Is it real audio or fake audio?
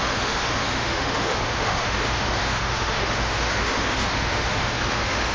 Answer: fake